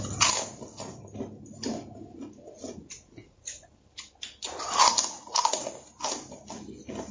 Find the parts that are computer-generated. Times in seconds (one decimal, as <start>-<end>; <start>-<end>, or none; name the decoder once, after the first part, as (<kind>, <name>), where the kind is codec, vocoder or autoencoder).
2.9-3.7 (vocoder, Vocos)